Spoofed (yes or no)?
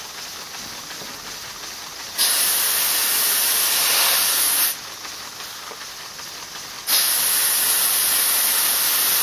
no